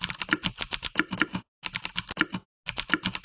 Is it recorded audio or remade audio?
recorded